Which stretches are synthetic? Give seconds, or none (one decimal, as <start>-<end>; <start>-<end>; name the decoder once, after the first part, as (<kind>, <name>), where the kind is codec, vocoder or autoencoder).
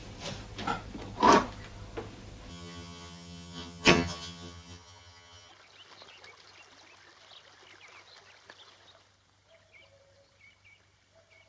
2.5-5.5 (vocoder, HiFi-GAN)